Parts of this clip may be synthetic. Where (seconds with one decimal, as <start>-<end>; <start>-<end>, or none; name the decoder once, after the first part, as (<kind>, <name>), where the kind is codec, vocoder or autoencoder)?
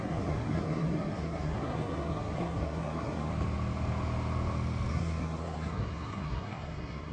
0.0-3.3 (codec, SNAC); 4.9-7.1